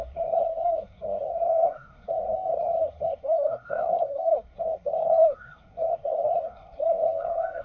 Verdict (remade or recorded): remade